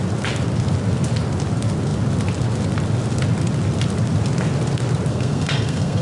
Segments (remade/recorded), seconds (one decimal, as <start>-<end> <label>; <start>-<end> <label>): 0.0-5.1 recorded; 5.1-6.0 remade